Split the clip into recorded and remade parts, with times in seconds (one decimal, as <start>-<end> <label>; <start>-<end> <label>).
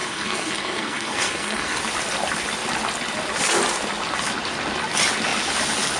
0.0-1.8 remade; 1.8-6.0 recorded